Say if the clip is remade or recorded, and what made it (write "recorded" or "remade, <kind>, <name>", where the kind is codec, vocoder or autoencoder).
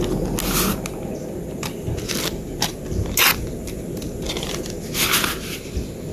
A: recorded